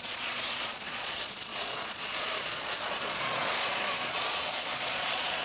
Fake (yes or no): yes